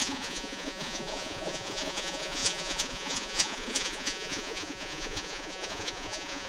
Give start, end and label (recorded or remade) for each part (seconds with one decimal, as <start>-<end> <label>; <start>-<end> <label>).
0.0-6.5 remade